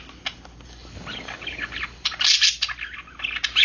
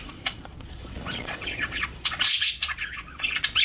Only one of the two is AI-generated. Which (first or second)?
second